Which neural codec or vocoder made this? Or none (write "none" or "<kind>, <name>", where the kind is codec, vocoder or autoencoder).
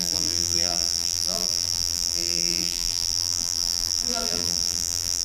vocoder, BigVGAN v2